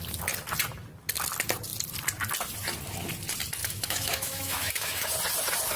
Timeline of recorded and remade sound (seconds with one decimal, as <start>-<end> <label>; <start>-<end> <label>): 0.0-3.6 recorded; 3.6-5.1 remade; 5.1-5.8 recorded